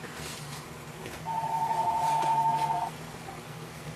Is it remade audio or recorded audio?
remade